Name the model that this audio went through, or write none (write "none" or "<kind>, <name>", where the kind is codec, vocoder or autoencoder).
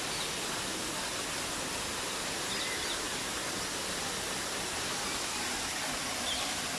none